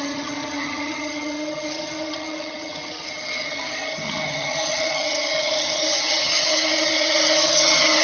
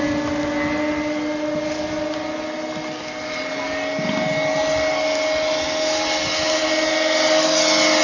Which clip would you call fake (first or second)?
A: first